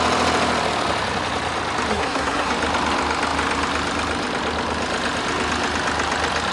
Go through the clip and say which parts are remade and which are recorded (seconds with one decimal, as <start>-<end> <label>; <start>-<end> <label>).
0.0-1.9 recorded; 1.9-2.5 remade; 2.5-6.5 recorded